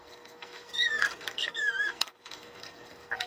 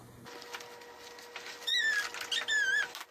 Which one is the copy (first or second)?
first